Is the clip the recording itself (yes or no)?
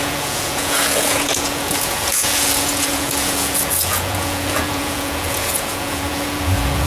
no